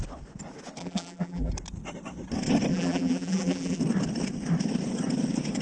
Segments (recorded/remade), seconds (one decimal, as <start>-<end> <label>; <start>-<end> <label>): 0.0-0.8 recorded; 0.8-1.5 remade; 1.5-2.7 recorded; 2.7-3.8 remade; 3.8-5.6 recorded